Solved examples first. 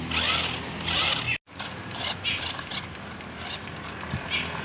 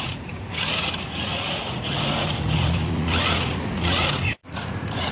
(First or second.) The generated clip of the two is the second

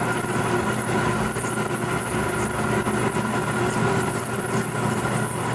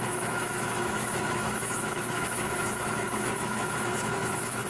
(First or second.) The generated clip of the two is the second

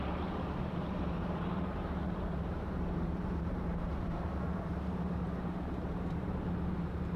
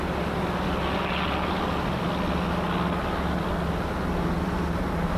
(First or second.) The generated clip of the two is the first